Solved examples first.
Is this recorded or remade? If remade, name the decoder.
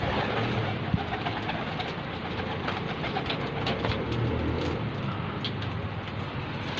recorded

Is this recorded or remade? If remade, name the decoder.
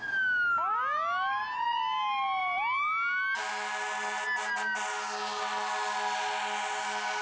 recorded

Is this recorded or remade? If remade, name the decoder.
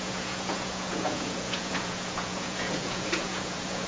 remade, vocoder, Vocos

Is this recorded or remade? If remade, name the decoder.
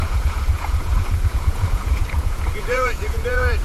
remade, vocoder, Vocos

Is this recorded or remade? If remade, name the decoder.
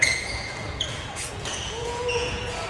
remade, vocoder, Vocos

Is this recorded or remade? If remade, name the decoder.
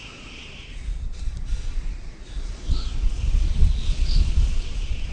remade, vocoder, Vocos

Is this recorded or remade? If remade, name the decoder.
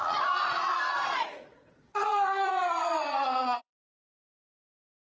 remade, vocoder, Vocos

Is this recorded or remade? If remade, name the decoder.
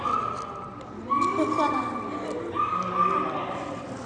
recorded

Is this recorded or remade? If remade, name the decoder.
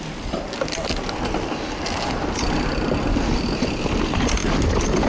recorded